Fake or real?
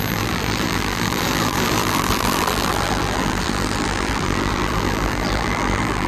fake